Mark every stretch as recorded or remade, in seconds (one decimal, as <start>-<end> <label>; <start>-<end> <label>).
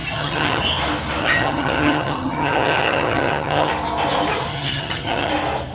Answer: 0.0-0.6 remade; 0.6-1.2 recorded; 1.2-3.7 remade; 3.7-4.5 recorded; 4.5-5.3 remade; 5.3-5.7 recorded